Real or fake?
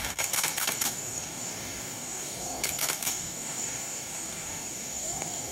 fake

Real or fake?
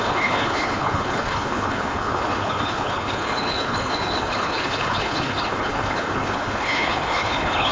fake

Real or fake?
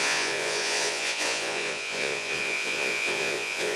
fake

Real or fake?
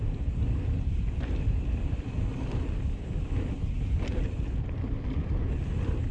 real